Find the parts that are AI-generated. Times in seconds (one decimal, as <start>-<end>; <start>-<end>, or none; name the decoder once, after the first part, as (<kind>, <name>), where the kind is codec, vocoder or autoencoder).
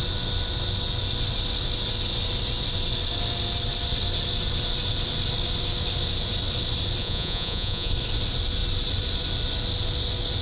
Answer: 7.0-7.9 (vocoder, Vocos)